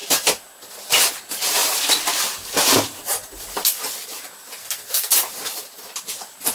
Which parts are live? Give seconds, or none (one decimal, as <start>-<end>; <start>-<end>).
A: 0.0-4.6; 5.1-6.5